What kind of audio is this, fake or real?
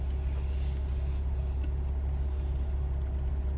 real